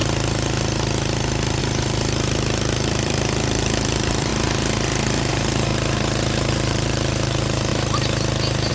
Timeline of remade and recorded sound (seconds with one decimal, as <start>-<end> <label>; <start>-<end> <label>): 0.0-1.6 recorded; 1.6-4.3 remade; 4.3-5.3 recorded; 5.3-5.7 remade; 5.7-6.5 recorded; 6.5-7.7 remade; 7.7-8.7 recorded